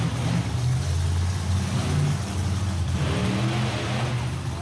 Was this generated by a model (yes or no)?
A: no